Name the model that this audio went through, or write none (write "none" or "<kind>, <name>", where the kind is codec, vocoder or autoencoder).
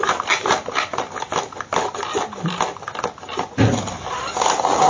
none